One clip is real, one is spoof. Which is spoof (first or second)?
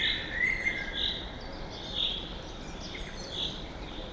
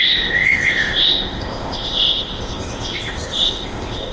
second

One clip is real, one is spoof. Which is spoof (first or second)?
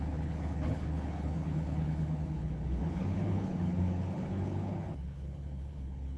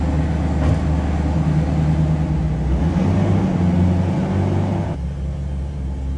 first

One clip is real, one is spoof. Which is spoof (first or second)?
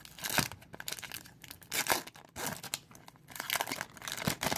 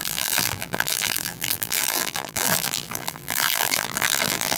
second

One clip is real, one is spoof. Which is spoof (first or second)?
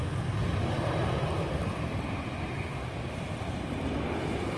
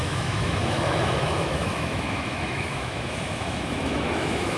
second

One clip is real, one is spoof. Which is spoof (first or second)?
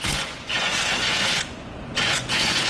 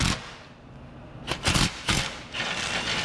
first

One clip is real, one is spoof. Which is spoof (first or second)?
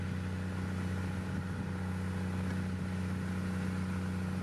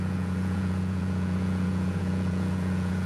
second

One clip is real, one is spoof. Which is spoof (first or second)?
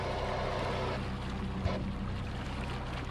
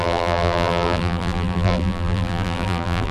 second